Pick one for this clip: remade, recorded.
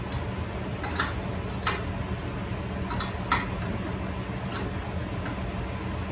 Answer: recorded